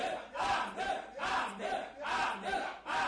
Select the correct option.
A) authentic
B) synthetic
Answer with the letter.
A